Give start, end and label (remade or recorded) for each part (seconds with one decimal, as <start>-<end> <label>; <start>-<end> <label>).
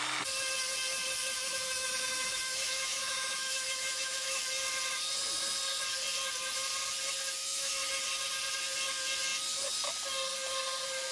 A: 0.0-1.4 recorded; 1.4-4.4 remade; 4.4-7.4 recorded; 7.4-7.9 remade; 7.9-11.1 recorded